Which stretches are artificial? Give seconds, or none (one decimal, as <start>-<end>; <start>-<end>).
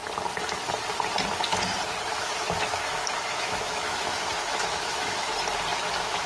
2.1-5.3; 5.7-6.3